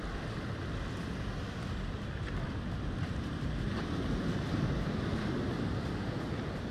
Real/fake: real